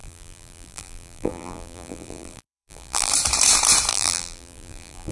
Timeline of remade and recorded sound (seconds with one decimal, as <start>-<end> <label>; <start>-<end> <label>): 0.0-3.1 remade; 3.1-3.9 recorded; 3.9-5.1 remade